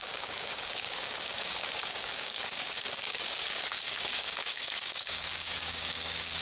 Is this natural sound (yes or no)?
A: no